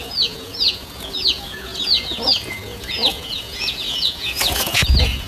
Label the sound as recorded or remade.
remade